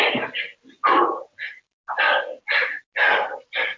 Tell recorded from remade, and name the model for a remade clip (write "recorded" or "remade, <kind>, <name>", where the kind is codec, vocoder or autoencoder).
recorded